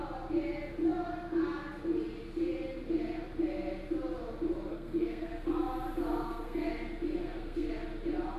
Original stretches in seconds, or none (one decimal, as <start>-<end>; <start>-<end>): 0.0-4.7; 5.3-6.1; 6.7-7.2; 7.7-8.4